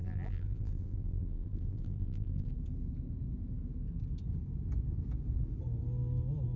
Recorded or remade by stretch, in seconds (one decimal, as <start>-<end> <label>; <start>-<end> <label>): 0.0-2.5 remade; 2.5-6.6 recorded